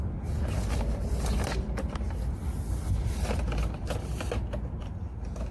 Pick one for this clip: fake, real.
real